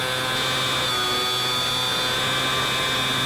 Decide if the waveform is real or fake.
real